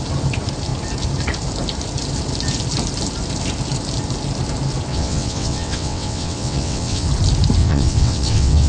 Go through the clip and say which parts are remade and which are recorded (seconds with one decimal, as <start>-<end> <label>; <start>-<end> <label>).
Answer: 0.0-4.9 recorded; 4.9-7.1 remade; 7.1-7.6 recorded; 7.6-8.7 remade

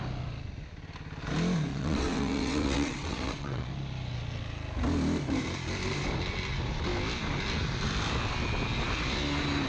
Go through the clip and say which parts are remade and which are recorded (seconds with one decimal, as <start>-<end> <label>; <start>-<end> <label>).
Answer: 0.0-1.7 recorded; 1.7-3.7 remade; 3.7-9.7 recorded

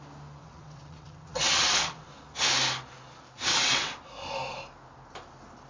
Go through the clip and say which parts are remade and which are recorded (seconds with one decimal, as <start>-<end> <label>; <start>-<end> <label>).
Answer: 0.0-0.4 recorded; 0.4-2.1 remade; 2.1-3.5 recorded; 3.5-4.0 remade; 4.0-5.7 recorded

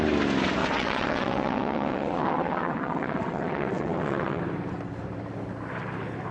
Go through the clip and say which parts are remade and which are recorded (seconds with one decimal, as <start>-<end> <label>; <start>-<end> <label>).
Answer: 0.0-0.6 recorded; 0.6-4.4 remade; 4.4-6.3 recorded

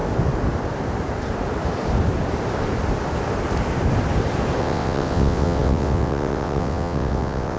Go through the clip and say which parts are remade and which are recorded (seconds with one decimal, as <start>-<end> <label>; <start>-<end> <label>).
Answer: 0.0-4.6 recorded; 4.6-7.6 remade

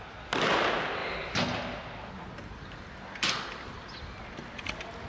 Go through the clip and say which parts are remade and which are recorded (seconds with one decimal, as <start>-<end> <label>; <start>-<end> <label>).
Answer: 0.0-5.1 recorded